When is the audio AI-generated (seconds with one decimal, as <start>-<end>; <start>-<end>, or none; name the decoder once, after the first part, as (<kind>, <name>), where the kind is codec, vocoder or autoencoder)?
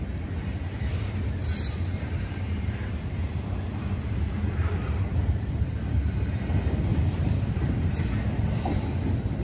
0.9-5.5 (vocoder, BigVGAN v2); 6.9-8.1